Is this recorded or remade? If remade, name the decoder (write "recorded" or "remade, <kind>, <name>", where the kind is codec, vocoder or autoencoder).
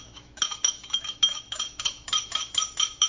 remade, autoencoder, DAC-VAE